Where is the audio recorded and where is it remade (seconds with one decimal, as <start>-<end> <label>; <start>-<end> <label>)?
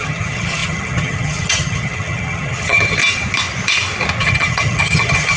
0.0-3.0 remade; 3.0-4.2 recorded; 4.2-5.4 remade